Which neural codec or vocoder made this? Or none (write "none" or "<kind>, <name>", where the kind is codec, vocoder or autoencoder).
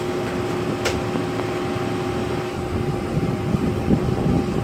vocoder, BigVGAN v2